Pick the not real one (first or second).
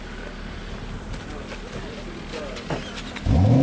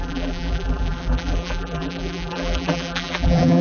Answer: second